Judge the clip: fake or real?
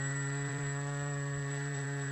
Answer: fake